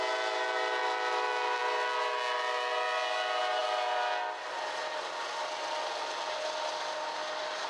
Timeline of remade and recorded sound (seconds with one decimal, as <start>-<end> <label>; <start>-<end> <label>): 0.0-7.7 recorded